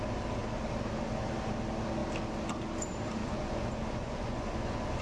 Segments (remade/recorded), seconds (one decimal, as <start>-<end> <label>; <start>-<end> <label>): 0.0-3.2 recorded; 3.2-5.0 remade